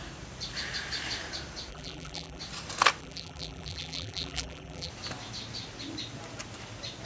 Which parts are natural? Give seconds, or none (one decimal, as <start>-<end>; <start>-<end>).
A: 0.0-1.7; 2.4-3.0; 4.9-7.1